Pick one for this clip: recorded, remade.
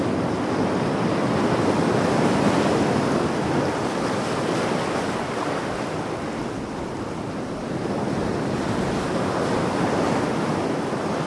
recorded